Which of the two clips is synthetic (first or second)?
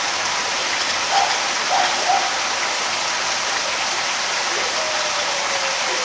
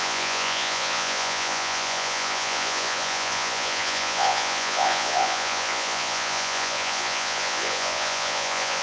second